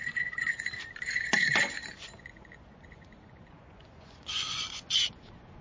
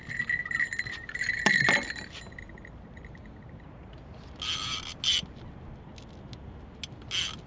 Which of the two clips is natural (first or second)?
second